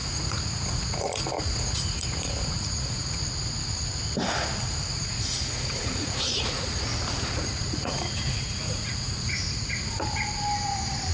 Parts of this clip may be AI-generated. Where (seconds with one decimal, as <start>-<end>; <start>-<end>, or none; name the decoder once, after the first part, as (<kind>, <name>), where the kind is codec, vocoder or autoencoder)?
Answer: 0.0-3.2 (vocoder, Vocos); 4.9-9.7